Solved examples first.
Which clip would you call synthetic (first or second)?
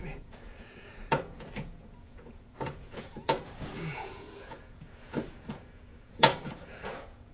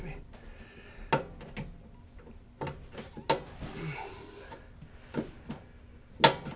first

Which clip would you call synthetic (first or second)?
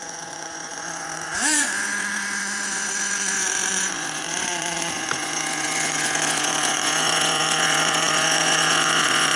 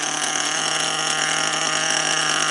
first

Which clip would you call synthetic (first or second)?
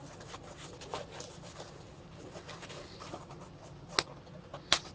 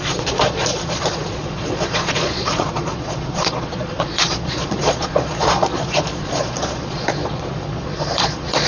second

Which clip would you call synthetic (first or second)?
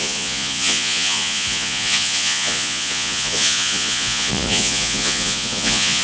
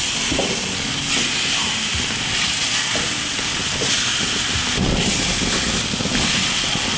first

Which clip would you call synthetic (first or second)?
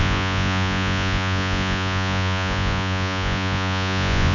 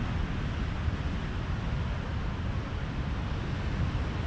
first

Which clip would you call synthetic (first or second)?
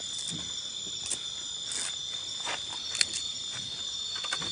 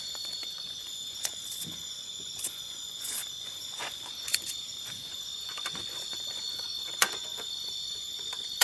second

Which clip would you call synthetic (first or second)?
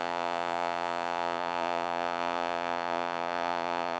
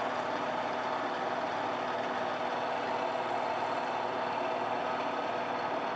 first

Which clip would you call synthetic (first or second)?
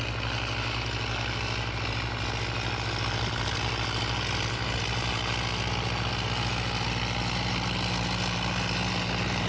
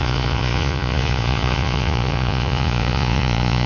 second